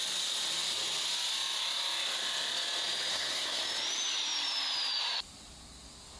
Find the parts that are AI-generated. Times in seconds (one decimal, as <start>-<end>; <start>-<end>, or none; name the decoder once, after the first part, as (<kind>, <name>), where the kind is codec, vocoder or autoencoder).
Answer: 3.1-3.6 (codec, SNAC)

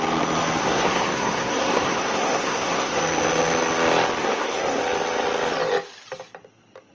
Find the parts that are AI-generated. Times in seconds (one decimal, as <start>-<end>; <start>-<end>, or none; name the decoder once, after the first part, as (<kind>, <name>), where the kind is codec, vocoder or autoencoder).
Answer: 0.6-3.0 (codec, SNAC); 4.2-4.8

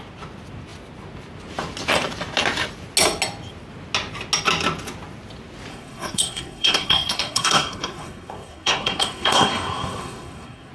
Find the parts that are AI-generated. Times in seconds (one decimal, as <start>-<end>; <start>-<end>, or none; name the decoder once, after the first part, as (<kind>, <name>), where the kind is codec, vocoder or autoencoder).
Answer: 5.7-10.7 (codec, SNAC)

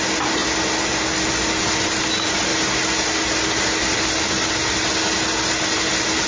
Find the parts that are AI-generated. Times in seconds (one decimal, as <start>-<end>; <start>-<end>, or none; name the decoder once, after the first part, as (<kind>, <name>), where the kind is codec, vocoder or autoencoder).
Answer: none

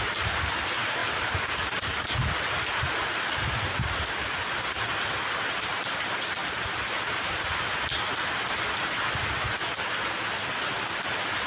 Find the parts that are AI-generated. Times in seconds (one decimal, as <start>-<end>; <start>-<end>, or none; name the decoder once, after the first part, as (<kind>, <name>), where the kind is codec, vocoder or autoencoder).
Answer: none

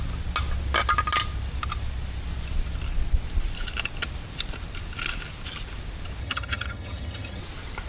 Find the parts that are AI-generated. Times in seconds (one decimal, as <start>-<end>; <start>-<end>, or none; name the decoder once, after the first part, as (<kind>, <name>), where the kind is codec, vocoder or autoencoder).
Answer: 6.2-7.4 (vocoder, HiFi-GAN)